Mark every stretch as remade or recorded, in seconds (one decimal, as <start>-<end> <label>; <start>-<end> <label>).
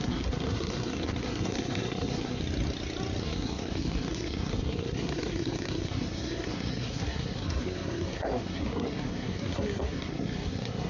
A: 0.0-2.4 remade; 2.4-3.2 recorded; 3.2-10.9 remade